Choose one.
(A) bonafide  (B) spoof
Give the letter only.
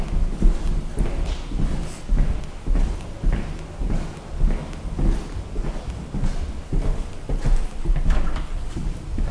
A